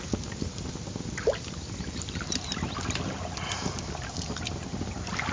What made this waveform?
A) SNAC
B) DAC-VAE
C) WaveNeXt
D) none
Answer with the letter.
D